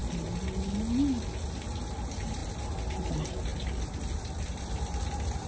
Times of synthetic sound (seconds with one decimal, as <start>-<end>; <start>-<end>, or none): none